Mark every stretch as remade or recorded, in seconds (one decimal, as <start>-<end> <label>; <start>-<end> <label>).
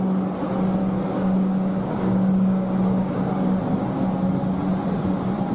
0.0-0.8 recorded; 0.8-3.6 remade; 3.6-5.5 recorded